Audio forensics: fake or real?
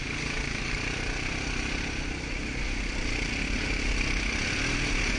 real